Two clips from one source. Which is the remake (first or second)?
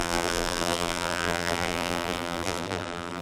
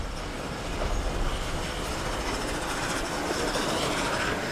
first